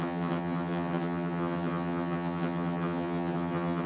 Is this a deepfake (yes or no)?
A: yes